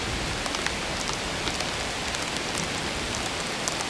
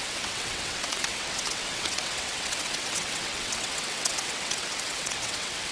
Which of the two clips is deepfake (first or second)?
second